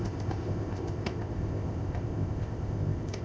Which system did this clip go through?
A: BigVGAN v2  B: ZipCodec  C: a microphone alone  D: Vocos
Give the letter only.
B